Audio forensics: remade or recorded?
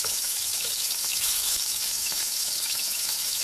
remade